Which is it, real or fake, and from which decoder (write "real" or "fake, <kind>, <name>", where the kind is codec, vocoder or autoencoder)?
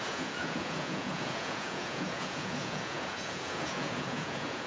fake, vocoder, Vocos